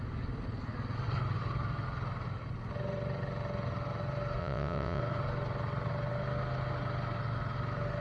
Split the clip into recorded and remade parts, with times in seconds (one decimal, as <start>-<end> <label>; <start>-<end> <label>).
0.0-4.4 recorded; 4.4-5.0 remade; 5.0-8.0 recorded